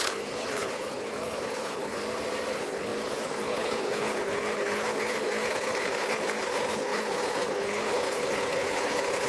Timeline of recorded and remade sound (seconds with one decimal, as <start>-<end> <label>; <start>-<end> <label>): 0.0-2.0 remade; 2.0-2.5 recorded; 2.5-9.3 remade